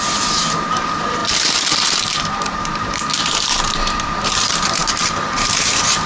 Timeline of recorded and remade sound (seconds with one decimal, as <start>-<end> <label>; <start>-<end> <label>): 0.0-6.1 remade